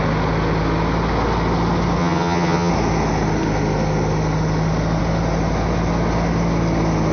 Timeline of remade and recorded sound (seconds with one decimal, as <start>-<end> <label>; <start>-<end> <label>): 0.0-2.0 recorded; 2.0-2.7 remade; 2.7-7.1 recorded